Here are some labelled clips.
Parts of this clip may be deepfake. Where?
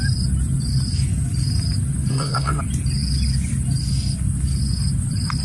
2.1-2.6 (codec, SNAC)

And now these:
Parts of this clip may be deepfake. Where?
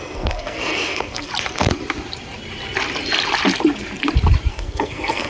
0.0-1.3 (codec, SNAC); 4.5-5.3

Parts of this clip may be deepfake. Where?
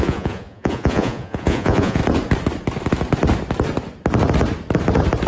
0.0-2.0 (vocoder, Vocos)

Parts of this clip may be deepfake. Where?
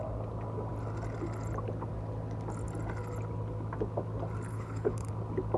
4.5-5.1 (codec, HILCodec)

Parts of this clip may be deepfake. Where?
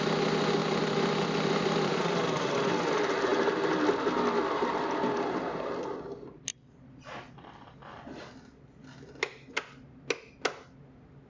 0.6-2.7 (vocoder, BigVGAN v2); 3.3-4.0; 6.5-9.6